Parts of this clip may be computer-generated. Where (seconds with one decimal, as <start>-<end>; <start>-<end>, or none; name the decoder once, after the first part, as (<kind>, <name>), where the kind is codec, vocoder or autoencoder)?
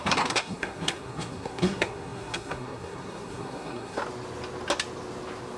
0.0-4.0 (codec, SNAC)